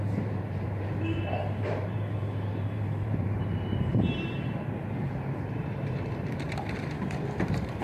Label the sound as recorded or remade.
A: remade